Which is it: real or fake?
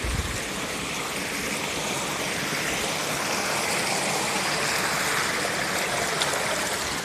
real